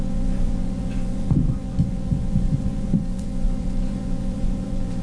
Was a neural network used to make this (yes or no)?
yes